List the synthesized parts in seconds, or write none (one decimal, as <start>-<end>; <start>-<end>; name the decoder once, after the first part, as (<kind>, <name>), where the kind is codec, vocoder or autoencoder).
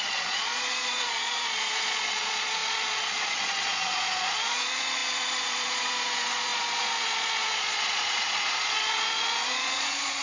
0.0-10.2 (vocoder, Vocos)